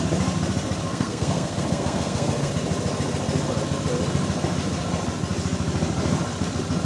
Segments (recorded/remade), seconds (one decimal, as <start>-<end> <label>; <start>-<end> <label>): 0.0-0.9 recorded; 0.9-2.5 remade; 2.5-6.8 recorded